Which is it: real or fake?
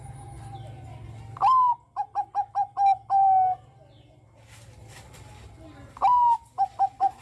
real